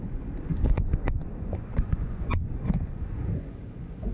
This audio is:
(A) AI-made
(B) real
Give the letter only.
A